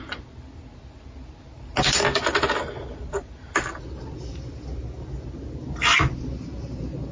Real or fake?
real